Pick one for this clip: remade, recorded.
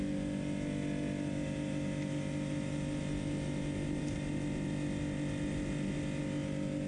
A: recorded